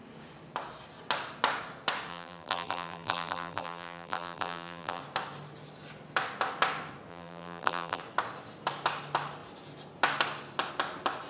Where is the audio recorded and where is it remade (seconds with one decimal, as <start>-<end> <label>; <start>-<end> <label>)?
0.0-2.1 recorded; 2.1-5.0 remade; 5.0-7.1 recorded; 7.1-8.0 remade; 8.0-11.3 recorded